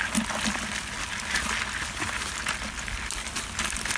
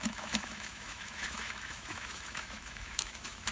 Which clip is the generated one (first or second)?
second